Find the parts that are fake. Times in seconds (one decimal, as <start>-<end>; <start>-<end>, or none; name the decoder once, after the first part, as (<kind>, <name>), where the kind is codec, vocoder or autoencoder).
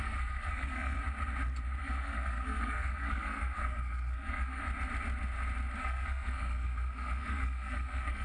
0.0-1.0 (codec, SNAC); 1.8-4.6; 5.8-8.2